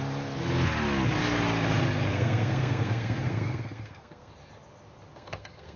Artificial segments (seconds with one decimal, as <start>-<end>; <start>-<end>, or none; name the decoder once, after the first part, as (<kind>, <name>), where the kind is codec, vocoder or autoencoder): 2.1-4.3 (codec, SNAC); 5.1-5.8